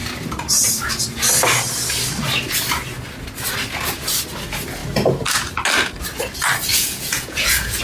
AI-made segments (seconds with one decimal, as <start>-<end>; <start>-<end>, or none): 6.7-7.8